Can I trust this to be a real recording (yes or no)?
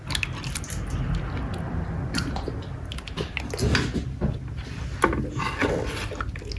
yes